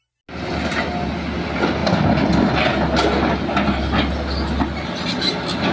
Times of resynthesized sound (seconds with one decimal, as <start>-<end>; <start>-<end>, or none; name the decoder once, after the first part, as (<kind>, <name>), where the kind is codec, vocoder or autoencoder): none